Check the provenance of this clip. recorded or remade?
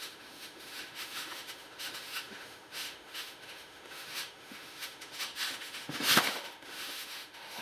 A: remade